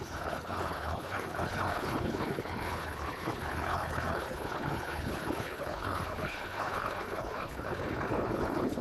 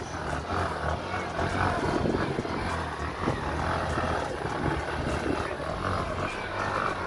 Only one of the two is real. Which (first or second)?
second